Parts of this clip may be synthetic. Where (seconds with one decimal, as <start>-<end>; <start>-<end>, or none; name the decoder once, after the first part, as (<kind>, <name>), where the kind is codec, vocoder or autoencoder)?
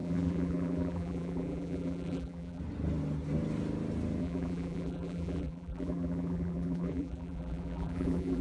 0.0-2.6 (vocoder, BigVGAN v2); 4.2-8.4